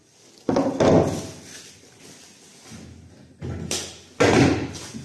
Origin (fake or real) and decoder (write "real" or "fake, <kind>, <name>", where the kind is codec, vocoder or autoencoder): real